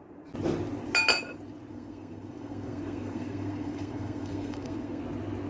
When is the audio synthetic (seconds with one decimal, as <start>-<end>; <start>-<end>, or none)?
1.7-5.0